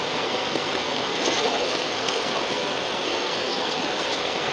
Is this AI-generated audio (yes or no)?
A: yes